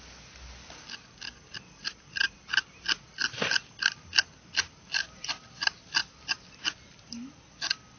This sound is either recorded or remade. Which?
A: recorded